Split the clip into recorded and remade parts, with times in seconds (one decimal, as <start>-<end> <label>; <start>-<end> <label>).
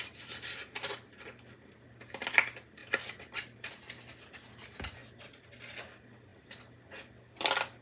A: 0.0-7.8 recorded